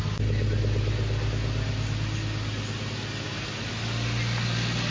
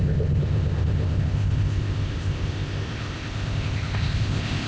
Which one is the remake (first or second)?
second